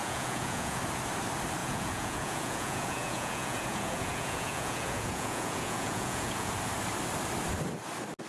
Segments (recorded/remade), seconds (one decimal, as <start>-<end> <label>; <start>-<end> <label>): 0.0-0.8 remade; 0.8-1.6 recorded; 1.6-6.5 remade; 6.5-8.3 recorded